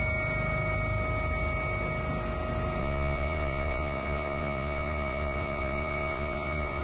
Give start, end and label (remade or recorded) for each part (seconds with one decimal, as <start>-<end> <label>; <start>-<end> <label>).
0.0-2.8 recorded; 2.8-6.8 remade